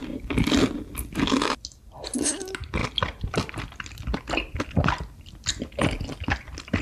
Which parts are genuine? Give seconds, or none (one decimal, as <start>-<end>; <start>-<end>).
0.0-6.8